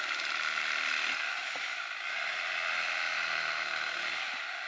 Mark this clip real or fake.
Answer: real